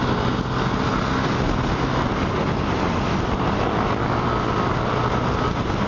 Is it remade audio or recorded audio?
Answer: recorded